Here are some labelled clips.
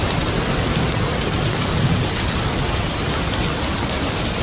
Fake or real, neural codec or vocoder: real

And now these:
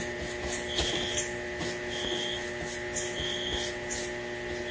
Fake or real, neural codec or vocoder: real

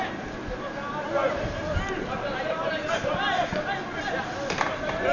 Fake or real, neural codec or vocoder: real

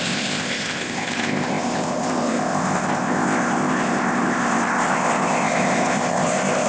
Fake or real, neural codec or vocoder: fake, codec, ZipCodec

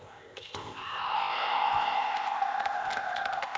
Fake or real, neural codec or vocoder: fake, codec, ZipCodec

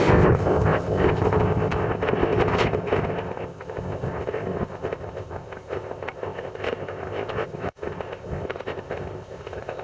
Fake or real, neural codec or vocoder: fake, codec, ZipCodec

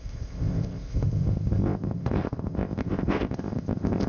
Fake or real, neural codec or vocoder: fake, codec, ZipCodec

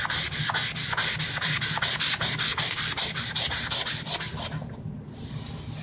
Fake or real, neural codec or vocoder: real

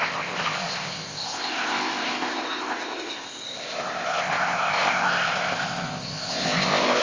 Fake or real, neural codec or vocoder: fake, codec, ZipCodec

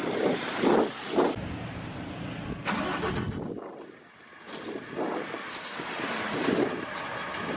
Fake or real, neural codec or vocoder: real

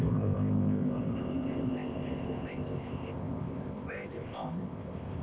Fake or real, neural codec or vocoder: fake, codec, ZipCodec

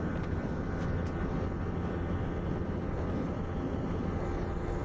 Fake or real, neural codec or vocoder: real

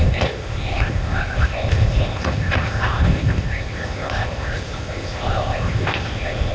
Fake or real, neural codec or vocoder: fake, codec, ZipCodec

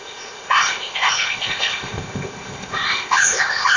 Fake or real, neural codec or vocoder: fake, codec, ZipCodec